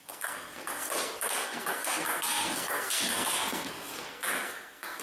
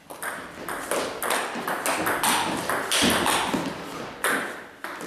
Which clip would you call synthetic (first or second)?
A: first